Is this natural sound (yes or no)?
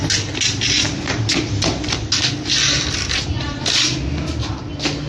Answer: yes